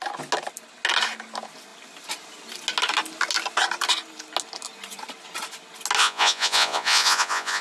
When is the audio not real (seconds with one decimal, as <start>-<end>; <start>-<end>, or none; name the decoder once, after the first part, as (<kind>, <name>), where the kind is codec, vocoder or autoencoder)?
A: 6.0-7.6 (vocoder, Vocos)